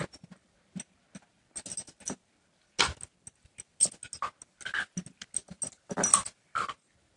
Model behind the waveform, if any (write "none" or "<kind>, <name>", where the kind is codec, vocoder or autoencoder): none